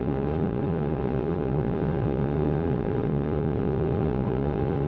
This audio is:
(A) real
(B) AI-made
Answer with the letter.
B